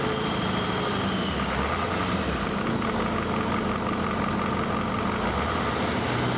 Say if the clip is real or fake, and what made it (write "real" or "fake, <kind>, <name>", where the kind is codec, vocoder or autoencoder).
real